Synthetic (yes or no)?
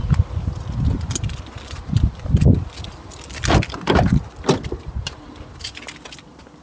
no